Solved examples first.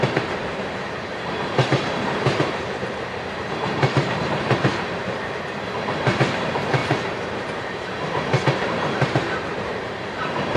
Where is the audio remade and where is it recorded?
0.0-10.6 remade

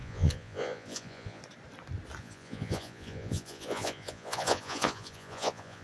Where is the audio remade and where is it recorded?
0.0-1.4 remade; 1.4-2.2 recorded; 2.2-5.8 remade

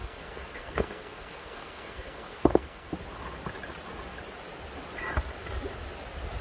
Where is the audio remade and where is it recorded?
0.0-2.9 remade; 2.9-6.4 recorded

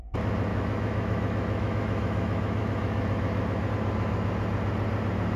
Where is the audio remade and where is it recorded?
0.0-0.5 recorded; 0.5-3.7 remade; 3.7-5.4 recorded

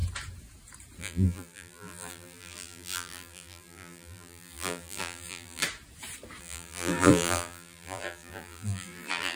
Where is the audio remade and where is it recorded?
0.0-1.0 recorded; 1.0-5.6 remade; 5.6-6.4 recorded; 6.4-9.4 remade